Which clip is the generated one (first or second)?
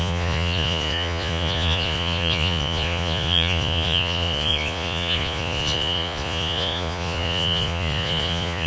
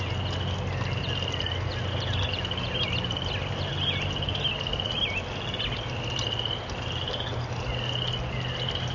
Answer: first